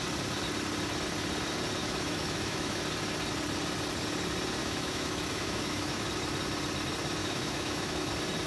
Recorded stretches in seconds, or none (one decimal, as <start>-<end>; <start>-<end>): 0.0-1.8; 2.8-4.6; 6.1-7.2; 8.1-8.5